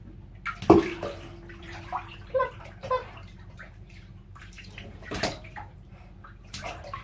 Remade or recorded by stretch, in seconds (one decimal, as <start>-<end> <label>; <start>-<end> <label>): 0.0-1.6 recorded; 1.6-5.8 remade; 5.8-7.0 recorded